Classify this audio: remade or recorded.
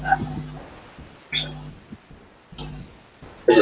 recorded